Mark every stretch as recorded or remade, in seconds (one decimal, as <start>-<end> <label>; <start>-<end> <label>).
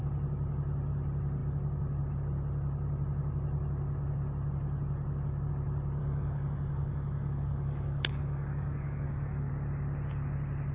0.0-6.0 recorded; 6.0-9.5 remade; 9.5-10.7 recorded